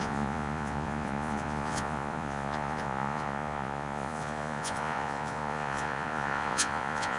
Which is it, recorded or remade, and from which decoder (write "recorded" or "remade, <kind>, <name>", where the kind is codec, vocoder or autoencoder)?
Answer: remade, vocoder, Vocos